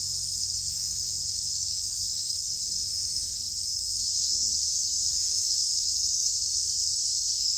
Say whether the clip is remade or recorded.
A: remade